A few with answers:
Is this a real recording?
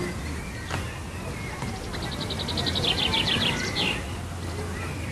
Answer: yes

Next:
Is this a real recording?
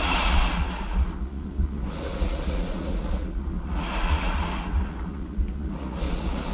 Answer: no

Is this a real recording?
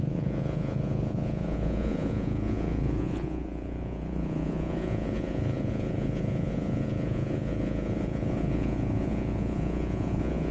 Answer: no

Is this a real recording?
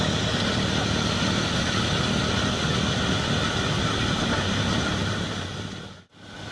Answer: yes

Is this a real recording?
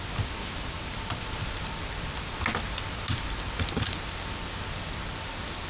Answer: yes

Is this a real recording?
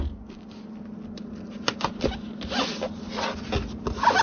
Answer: yes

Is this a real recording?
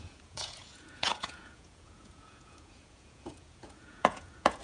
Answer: no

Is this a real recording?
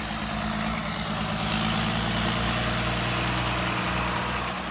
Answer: yes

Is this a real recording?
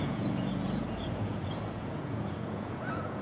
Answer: no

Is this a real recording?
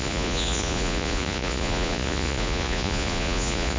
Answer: no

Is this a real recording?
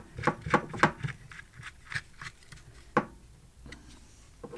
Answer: yes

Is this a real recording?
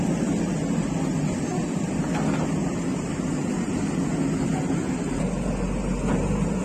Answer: yes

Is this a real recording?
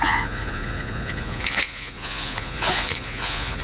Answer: no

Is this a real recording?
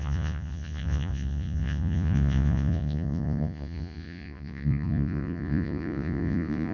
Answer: no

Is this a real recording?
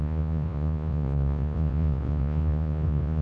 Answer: no